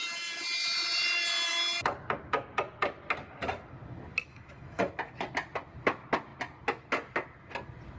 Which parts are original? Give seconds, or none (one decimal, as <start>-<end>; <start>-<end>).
0.0-4.3; 4.9-8.0